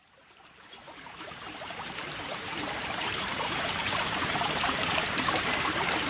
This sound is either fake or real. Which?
fake